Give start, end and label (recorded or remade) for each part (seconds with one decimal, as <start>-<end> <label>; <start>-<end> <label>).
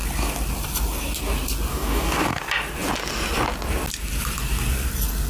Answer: 0.0-1.7 recorded; 1.7-2.4 remade; 2.4-5.3 recorded